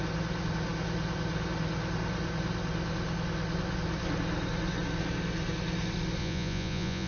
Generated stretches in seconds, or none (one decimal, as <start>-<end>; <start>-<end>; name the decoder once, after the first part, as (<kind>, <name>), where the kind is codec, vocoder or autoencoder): 6.2-7.1 (vocoder, Vocos)